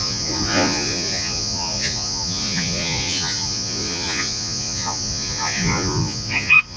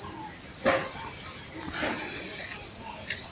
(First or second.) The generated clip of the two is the first